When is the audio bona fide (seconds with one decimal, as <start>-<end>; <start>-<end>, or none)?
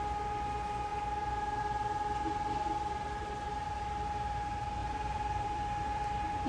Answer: 0.0-4.8